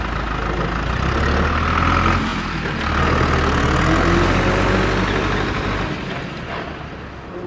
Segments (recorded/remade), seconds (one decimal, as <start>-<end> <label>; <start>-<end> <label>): 0.0-7.5 recorded

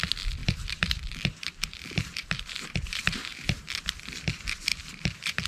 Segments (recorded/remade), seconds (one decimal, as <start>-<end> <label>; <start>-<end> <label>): 0.0-0.4 recorded; 0.4-3.7 remade; 3.7-4.7 recorded; 4.7-5.5 remade

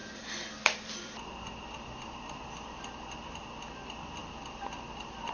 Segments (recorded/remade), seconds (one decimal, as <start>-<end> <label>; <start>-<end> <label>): 0.0-3.2 remade; 3.2-4.2 recorded; 4.2-5.3 remade